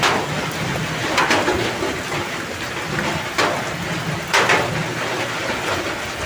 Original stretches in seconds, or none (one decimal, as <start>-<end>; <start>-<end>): 0.0-6.3

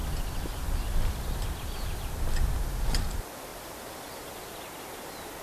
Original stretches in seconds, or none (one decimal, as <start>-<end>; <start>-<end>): 0.0-3.5; 4.3-5.4

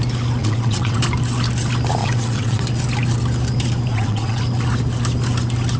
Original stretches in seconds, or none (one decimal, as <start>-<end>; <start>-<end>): 0.0-0.4; 1.0-2.0; 2.6-3.9; 4.4-5.8

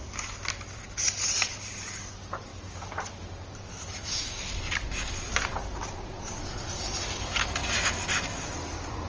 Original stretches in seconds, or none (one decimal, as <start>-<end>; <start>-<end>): 0.0-9.1

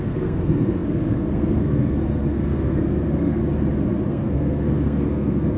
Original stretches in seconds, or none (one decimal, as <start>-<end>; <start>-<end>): 3.4-4.1